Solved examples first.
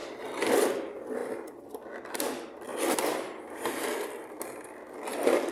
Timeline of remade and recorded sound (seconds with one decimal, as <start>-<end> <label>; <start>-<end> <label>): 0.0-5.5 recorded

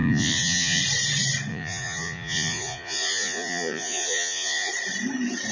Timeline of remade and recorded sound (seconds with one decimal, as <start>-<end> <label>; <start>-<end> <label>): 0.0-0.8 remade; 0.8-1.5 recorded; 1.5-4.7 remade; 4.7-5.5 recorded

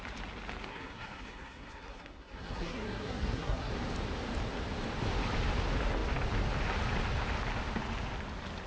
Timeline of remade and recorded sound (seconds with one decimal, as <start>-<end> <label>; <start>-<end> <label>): 0.0-0.7 recorded; 0.7-3.7 remade; 3.7-8.7 recorded

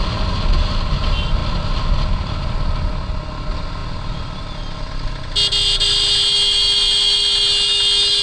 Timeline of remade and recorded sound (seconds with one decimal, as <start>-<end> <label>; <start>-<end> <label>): 0.0-8.2 recorded

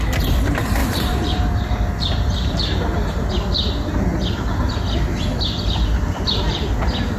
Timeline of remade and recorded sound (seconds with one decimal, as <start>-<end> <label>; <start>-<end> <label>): 0.0-0.8 recorded; 0.8-3.3 remade; 3.3-7.2 recorded